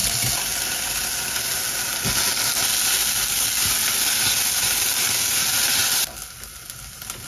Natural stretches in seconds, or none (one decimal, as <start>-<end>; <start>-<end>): 0.0-7.3